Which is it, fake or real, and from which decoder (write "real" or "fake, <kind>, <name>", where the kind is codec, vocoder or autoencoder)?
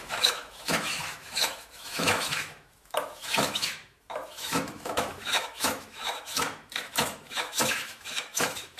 fake, autoencoder, DAC-VAE